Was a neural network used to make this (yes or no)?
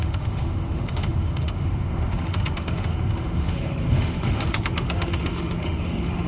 yes